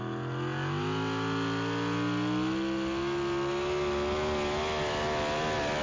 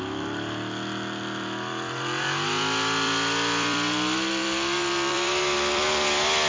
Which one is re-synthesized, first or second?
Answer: second